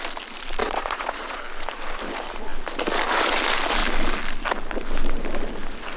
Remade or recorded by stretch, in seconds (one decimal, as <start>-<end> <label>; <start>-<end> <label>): 0.0-0.6 recorded; 0.6-1.4 remade; 1.4-6.0 recorded